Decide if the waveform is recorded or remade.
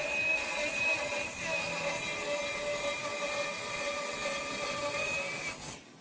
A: recorded